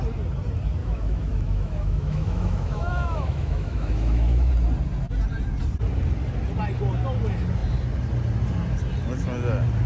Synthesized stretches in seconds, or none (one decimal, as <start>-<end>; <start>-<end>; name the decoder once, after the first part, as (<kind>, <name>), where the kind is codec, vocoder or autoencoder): 0.8-4.5 (autoencoder, DAC-VAE)

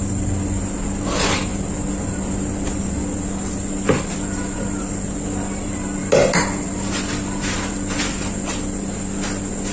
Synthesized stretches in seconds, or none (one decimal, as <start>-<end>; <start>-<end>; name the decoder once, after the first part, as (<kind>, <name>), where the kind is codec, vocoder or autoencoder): none

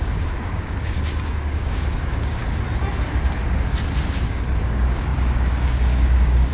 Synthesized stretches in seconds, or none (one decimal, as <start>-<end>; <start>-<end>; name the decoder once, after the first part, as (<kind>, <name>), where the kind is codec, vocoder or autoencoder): 0.0-2.4 (codec, DAC); 4.6-6.5

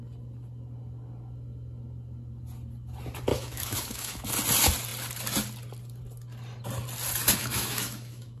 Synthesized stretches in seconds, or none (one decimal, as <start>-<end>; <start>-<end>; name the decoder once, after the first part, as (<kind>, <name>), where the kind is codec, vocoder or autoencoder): 3.3-4.3 (autoencoder, DAC-VAE); 7.4-8.4

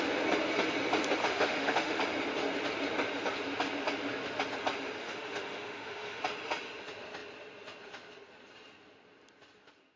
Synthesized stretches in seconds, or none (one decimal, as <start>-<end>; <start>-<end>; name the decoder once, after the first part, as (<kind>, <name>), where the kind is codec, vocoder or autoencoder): 1.2-2.0 (autoencoder, DAC-VAE); 5.0-6.2

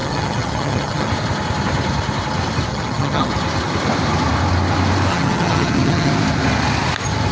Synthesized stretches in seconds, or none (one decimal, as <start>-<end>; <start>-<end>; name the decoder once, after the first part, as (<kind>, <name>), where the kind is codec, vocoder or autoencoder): 0.0-1.1 (vocoder, HiFi-GAN); 2.7-3.3; 5.1-6.1